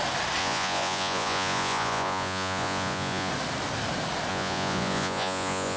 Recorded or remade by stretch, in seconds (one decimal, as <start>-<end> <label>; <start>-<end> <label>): 0.0-0.4 recorded; 0.4-3.3 remade; 3.3-4.3 recorded; 4.3-5.8 remade